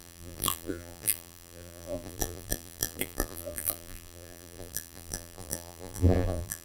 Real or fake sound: fake